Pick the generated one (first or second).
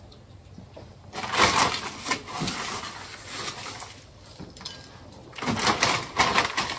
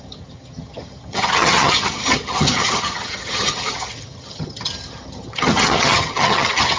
second